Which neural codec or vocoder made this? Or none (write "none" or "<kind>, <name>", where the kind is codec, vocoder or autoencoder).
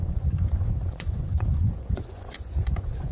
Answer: vocoder, Vocos